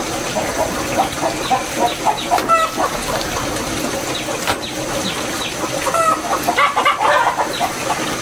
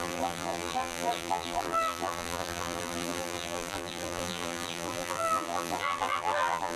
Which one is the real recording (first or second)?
first